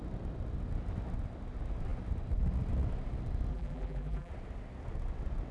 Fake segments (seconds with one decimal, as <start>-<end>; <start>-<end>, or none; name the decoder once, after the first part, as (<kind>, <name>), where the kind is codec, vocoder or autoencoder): 3.5-4.3 (vocoder, BigVGAN v2)